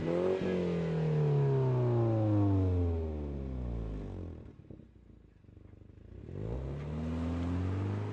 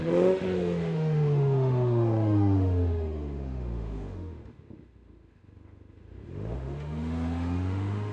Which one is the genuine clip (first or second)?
first